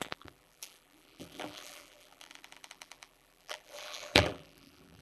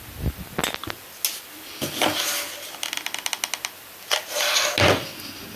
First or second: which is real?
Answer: second